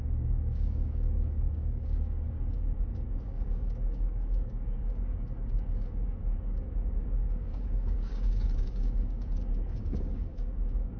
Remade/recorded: remade